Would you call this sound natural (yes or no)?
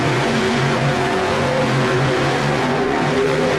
no